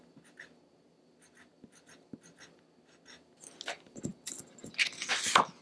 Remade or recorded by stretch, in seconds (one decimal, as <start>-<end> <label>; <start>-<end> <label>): 0.0-5.6 recorded